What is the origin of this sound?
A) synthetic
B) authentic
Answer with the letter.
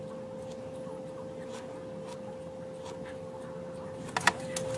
B